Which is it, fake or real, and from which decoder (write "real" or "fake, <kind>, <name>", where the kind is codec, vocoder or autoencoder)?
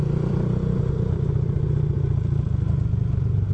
fake, vocoder, BigVGAN v2